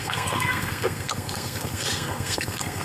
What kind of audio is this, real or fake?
fake